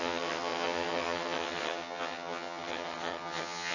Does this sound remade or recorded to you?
remade